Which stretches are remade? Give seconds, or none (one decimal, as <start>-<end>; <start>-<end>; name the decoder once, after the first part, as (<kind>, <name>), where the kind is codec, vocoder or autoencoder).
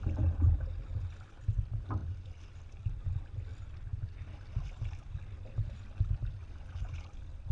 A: none